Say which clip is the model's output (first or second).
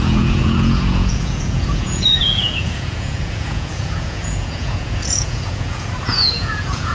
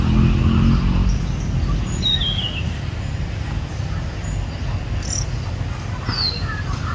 first